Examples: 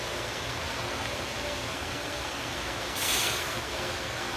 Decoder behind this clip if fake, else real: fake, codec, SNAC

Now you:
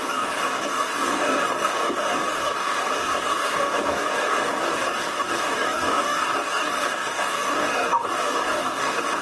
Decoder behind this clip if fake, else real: fake, codec, DAC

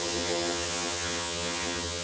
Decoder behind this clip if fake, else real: fake, vocoder, HiFi-GAN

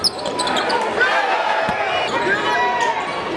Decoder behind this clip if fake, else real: real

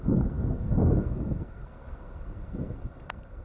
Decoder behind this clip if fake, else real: fake, codec, SNAC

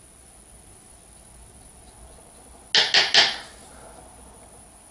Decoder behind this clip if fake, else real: real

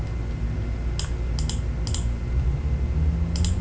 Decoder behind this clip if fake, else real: real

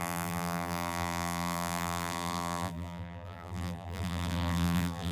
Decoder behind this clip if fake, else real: fake, vocoder, BigVGAN v2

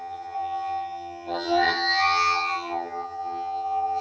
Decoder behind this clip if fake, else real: fake, vocoder, HiFi-GAN